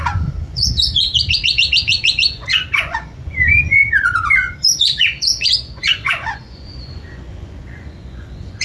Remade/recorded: remade